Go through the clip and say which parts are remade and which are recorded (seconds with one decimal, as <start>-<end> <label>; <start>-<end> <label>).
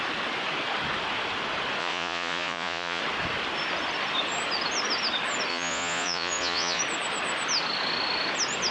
0.0-1.8 recorded; 1.8-3.0 remade; 3.0-5.5 recorded; 5.5-6.8 remade; 6.8-8.7 recorded